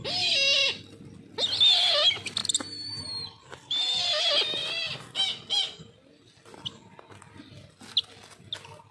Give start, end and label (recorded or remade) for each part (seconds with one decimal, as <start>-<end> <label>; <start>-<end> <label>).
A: 0.0-8.9 recorded